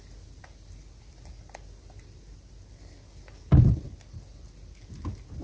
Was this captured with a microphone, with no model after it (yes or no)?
yes